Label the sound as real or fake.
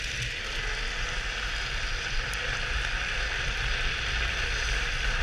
real